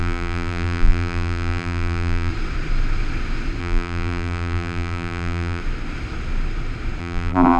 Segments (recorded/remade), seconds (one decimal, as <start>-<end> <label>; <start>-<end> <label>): 0.0-2.3 remade; 2.3-3.6 recorded; 3.6-5.6 remade; 5.6-7.0 recorded; 7.0-7.6 remade